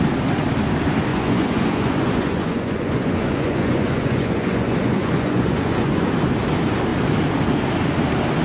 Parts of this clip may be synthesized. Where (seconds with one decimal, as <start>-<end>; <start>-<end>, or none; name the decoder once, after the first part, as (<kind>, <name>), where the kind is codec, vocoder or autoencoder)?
1.1-6.1 (vocoder, Vocos)